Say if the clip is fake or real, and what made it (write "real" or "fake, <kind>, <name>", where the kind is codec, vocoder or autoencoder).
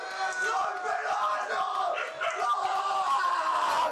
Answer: fake, vocoder, BigVGAN v2